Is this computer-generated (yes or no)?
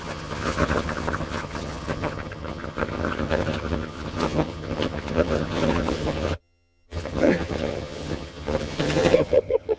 yes